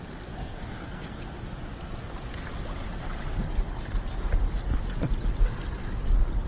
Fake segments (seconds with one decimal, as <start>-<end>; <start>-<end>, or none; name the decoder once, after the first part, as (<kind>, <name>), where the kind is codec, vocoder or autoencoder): 0.4-1.2 (codec, SNAC)